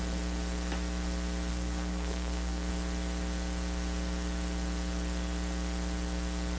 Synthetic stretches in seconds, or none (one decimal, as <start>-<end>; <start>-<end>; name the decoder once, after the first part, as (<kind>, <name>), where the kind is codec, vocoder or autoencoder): 1.5-2.7 (codec, SNAC)